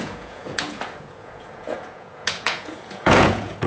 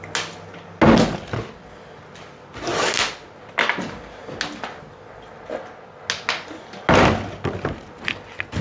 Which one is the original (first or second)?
second